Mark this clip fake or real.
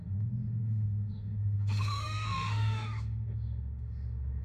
fake